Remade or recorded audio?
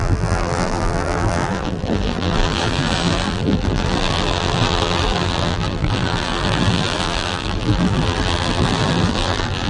remade